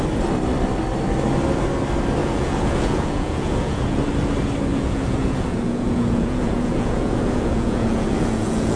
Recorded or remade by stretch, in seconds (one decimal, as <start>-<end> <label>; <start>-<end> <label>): 0.0-2.2 recorded; 2.2-4.0 remade; 4.0-4.7 recorded; 4.7-8.8 remade